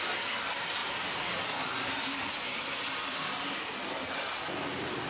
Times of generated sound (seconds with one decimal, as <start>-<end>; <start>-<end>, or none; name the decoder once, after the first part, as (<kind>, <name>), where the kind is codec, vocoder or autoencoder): 2.5-3.8 (vocoder, BigVGAN v2)